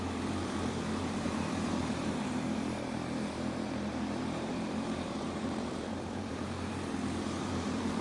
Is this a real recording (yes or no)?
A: no